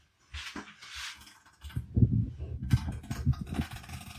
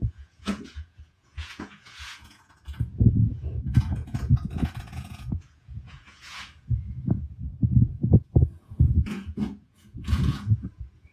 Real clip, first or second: first